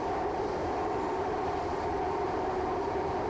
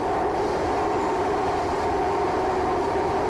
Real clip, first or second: second